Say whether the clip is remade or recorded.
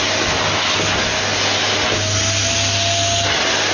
recorded